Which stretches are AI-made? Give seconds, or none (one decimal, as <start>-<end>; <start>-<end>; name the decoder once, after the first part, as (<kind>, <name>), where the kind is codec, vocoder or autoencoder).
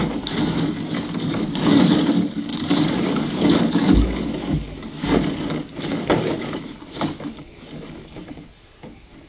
0.0-9.3 (codec, DAC)